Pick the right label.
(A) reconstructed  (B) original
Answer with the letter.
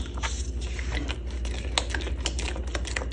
B